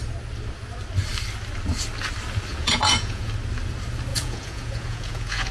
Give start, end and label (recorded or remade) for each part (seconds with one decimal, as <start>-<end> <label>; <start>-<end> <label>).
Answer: 0.0-2.5 recorded; 2.5-3.3 remade; 3.3-4.1 recorded; 4.1-5.5 remade